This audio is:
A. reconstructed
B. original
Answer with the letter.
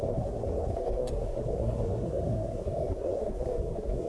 A